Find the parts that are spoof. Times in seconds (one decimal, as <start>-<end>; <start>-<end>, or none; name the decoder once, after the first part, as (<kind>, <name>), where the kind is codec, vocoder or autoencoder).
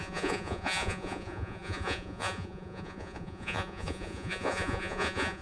0.0-5.4 (vocoder, Vocos)